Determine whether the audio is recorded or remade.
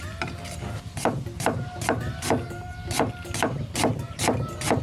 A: recorded